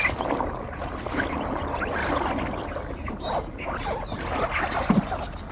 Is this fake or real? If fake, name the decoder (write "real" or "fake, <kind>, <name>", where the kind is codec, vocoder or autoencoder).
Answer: real